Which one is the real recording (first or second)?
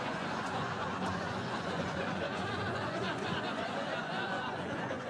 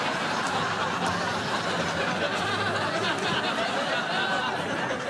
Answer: second